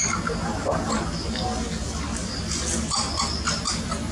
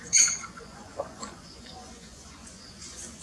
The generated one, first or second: second